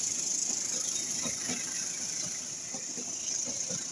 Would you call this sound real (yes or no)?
yes